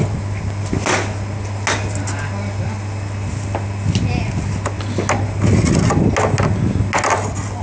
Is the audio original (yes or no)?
yes